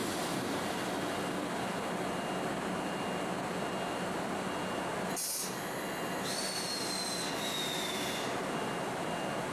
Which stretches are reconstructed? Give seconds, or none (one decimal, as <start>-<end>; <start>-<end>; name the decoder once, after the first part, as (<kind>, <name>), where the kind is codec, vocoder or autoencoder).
none